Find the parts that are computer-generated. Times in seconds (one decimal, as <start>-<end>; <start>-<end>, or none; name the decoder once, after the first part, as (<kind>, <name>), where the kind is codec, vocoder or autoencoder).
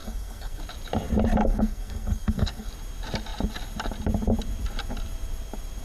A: 0.0-0.6 (codec, SNAC); 1.4-2.7